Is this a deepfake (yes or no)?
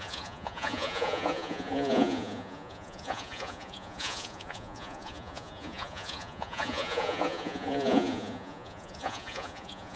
yes